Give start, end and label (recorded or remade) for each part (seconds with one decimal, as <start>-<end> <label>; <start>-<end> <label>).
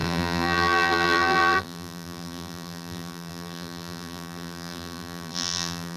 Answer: 0.0-6.0 remade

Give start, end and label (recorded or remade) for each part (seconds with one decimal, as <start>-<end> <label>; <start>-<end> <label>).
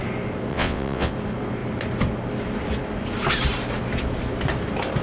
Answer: 0.0-0.5 recorded; 0.5-1.1 remade; 1.1-5.0 recorded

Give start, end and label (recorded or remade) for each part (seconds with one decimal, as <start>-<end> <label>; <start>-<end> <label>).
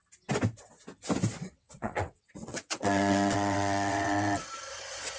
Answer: 0.0-1.4 recorded; 1.4-4.4 remade; 4.4-5.2 recorded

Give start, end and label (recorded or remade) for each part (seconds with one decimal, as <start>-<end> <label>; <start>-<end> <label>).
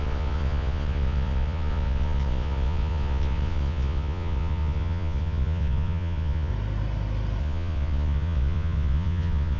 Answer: 0.0-6.5 remade; 6.5-7.4 recorded; 7.4-9.6 remade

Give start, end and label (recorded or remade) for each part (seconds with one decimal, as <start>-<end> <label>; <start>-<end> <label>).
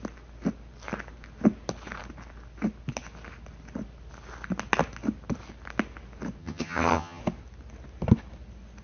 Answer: 0.0-6.4 recorded; 6.4-7.2 remade; 7.2-8.8 recorded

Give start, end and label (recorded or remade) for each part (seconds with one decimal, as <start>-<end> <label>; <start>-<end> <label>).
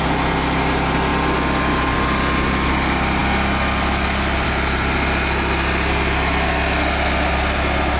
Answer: 0.0-8.0 recorded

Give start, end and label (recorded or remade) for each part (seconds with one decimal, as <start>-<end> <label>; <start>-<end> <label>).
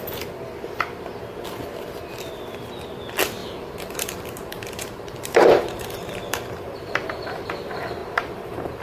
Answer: 0.0-3.4 recorded; 3.4-7.5 remade; 7.5-8.0 recorded; 8.0-8.8 remade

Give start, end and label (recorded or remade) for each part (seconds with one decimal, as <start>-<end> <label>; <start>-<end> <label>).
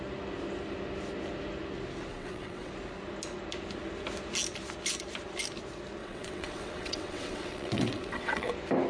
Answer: 0.0-2.1 recorded; 2.1-2.7 remade; 2.7-6.0 recorded; 6.0-8.5 remade; 8.5-8.9 recorded